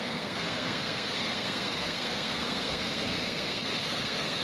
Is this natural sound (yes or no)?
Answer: no